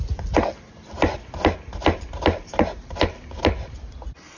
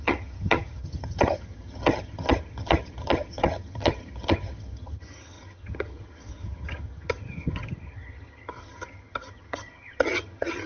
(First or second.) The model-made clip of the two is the second